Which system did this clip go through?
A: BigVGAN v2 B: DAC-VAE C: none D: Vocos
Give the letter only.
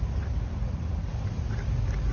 C